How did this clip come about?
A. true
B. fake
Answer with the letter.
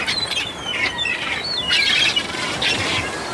B